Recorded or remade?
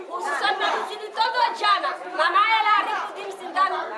remade